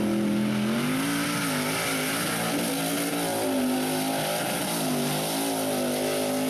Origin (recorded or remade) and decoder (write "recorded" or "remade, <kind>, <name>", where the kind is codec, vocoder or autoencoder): recorded